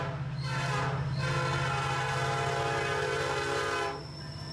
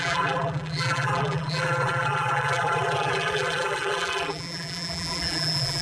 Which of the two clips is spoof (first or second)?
second